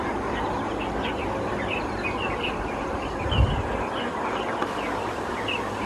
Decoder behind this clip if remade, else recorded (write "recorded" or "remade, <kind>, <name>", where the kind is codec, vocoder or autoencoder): recorded